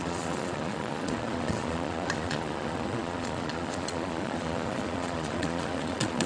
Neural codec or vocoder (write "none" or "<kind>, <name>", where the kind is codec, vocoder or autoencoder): vocoder, Vocos